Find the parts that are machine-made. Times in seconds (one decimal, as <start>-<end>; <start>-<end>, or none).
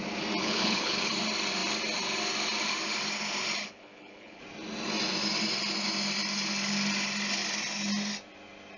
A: 0.4-1.1; 3.6-4.4